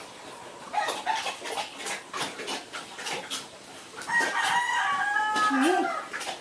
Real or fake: real